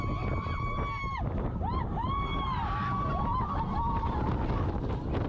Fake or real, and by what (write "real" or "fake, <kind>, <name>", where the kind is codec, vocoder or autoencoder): real